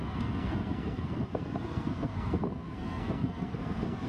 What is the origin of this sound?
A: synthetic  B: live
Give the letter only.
A